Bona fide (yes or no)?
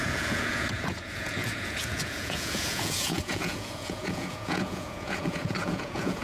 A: no